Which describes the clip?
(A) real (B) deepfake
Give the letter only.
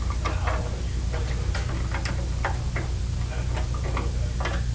A